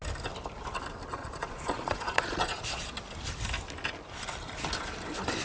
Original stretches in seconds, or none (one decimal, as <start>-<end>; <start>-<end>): 0.0-1.1; 2.9-5.4